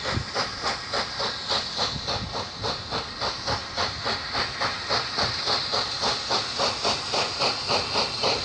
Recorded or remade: recorded